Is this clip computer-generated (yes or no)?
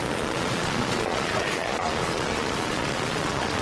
yes